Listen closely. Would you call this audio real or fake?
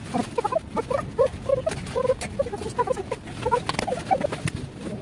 real